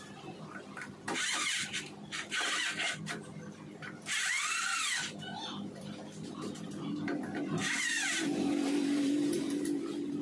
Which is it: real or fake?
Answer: fake